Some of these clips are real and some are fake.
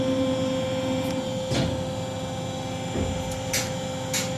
real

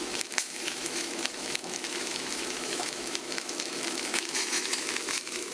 fake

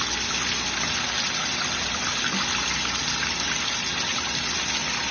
real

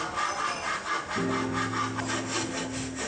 real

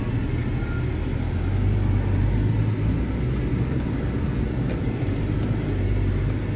real